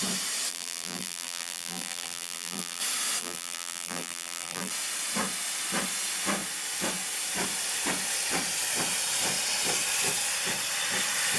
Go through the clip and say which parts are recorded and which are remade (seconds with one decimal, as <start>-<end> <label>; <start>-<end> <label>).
0.0-0.5 recorded; 0.5-2.8 remade; 2.8-3.2 recorded; 3.2-4.7 remade; 4.7-11.4 recorded